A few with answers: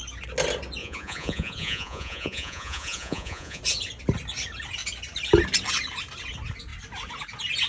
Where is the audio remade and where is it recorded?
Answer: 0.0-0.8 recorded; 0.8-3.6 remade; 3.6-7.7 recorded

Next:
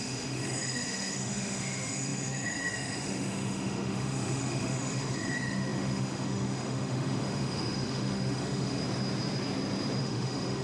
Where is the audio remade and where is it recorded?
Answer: 0.0-8.8 remade; 8.8-10.0 recorded; 10.0-10.6 remade